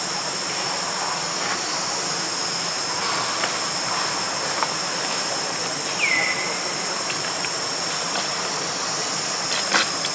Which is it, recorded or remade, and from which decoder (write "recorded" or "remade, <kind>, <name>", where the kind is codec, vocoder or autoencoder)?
recorded